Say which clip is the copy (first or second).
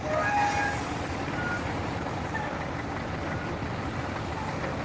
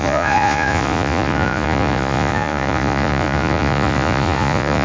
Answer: second